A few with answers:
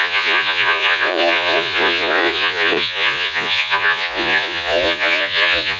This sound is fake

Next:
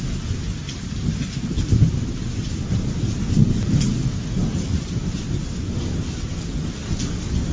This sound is real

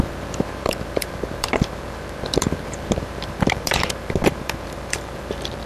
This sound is fake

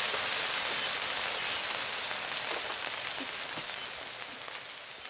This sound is real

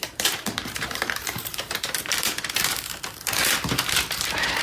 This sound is fake